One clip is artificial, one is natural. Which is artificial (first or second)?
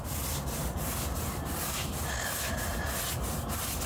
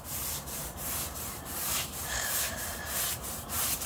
second